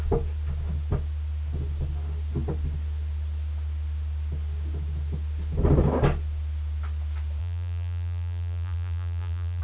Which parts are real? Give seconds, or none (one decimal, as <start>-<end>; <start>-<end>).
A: 0.0-7.4